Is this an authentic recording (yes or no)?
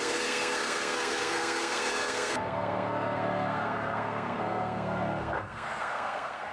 no